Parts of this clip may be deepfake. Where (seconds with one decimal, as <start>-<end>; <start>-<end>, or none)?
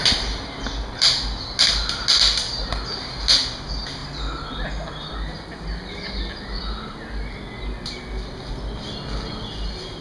none